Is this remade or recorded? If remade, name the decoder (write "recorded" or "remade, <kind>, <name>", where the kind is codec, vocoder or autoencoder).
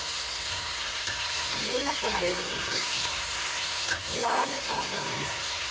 remade, codec, SNAC